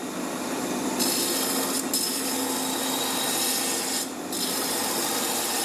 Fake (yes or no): no